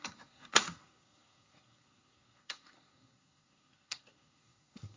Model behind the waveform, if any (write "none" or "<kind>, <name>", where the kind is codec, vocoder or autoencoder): codec, SNAC